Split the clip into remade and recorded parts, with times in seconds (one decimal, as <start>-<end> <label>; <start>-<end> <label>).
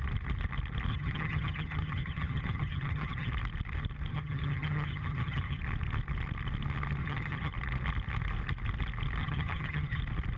0.0-0.9 recorded; 0.9-3.3 remade; 3.3-4.1 recorded; 4.1-5.6 remade; 5.6-7.0 recorded; 7.0-7.5 remade; 7.5-9.2 recorded; 9.2-10.0 remade; 10.0-10.4 recorded